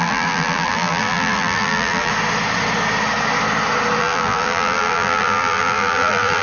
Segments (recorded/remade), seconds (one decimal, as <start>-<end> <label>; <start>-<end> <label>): 0.0-2.1 remade; 2.1-4.0 recorded; 4.0-6.4 remade

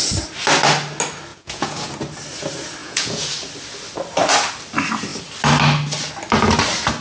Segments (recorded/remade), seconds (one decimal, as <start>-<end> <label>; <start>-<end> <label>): 0.0-1.3 recorded; 1.3-1.9 remade; 1.9-2.8 recorded; 2.8-3.3 remade; 3.3-7.0 recorded

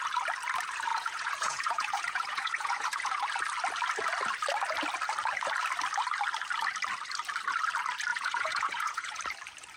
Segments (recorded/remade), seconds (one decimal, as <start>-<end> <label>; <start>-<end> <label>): 0.0-0.9 recorded; 0.9-3.2 remade; 3.2-8.1 recorded; 8.1-9.2 remade; 9.2-9.8 recorded

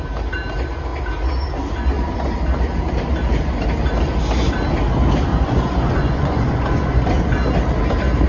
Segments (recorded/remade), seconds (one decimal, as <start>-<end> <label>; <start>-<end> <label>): 0.0-5.3 recorded; 5.3-7.1 remade; 7.1-8.3 recorded

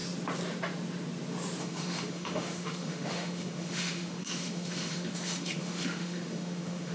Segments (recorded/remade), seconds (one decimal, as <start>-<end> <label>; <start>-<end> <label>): 0.0-1.6 recorded; 1.6-6.9 remade

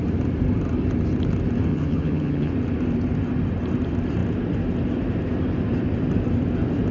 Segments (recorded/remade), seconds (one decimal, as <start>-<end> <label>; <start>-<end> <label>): 0.0-1.7 recorded; 1.7-2.5 remade; 2.5-6.9 recorded

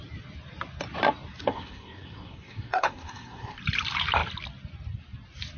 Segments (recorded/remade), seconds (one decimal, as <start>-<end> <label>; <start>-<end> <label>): 0.0-1.4 recorded; 1.4-3.6 remade; 3.6-5.6 recorded